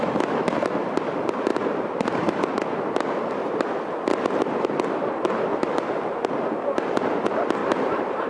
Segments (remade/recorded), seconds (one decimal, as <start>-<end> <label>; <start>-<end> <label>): 0.0-7.6 recorded; 7.6-8.3 remade